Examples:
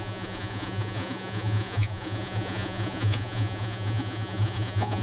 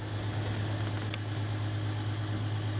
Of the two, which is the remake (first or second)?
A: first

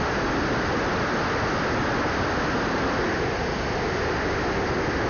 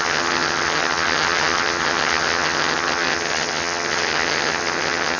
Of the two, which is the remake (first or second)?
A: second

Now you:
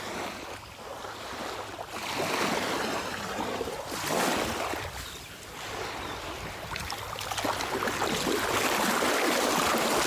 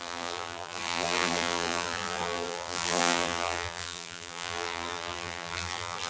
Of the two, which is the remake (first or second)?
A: second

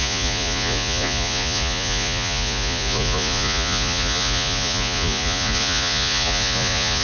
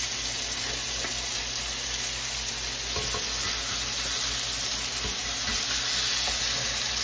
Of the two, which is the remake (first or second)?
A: first